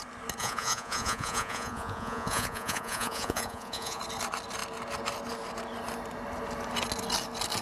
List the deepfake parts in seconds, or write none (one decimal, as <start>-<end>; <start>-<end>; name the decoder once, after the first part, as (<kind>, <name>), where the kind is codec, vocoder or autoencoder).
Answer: 0.4-4.0 (vocoder, Vocos)